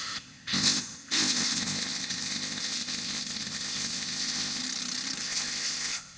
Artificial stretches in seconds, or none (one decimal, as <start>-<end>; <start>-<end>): 0.0-4.6; 5.2-6.2

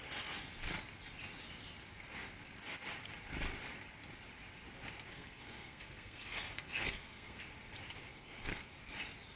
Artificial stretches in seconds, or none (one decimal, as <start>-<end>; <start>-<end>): 5.1-7.4; 8.1-8.7

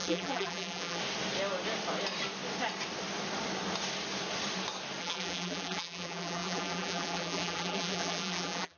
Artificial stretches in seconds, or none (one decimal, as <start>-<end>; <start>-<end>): 0.0-1.0; 5.0-8.8

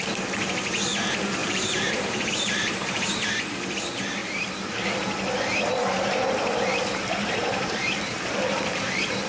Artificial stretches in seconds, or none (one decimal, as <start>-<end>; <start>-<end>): 1.4-3.3; 4.2-4.7; 6.7-8.5

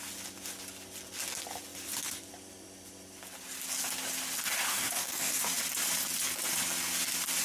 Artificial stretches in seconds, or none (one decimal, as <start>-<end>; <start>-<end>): 4.7-5.4

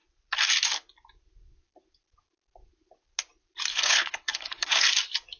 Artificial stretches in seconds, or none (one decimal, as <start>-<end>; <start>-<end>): 3.7-4.9

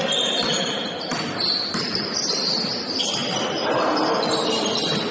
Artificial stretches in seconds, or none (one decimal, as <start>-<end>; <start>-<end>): none

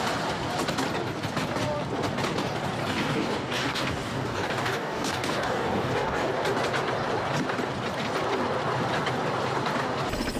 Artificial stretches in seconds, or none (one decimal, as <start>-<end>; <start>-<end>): 2.8-6.3